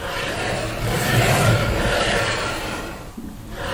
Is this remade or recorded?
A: remade